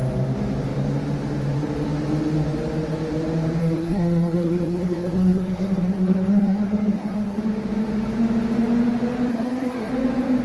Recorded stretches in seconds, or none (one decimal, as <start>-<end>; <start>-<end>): 0.0-3.6; 7.4-9.3; 9.9-10.4